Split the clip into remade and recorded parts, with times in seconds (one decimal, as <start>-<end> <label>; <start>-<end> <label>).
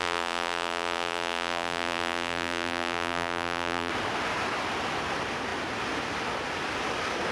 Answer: 0.0-3.9 remade; 3.9-7.3 recorded